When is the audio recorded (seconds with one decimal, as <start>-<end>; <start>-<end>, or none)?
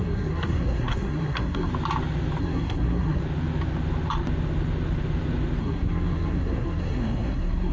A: 1.7-2.4; 3.2-5.6